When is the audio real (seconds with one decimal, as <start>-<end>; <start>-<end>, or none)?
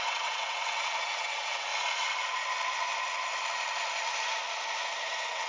1.7-5.0